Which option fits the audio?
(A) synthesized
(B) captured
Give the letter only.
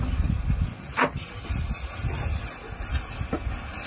B